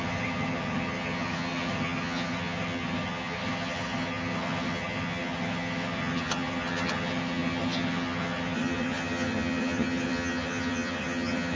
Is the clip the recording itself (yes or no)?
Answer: no